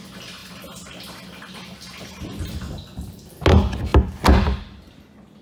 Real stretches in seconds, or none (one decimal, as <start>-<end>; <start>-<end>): 0.0-0.4; 3.2-5.4